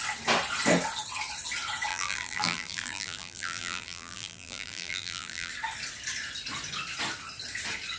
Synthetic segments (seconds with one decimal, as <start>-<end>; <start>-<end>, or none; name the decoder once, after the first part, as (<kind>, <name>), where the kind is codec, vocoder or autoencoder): 1.9-5.5 (vocoder, BigVGAN v2)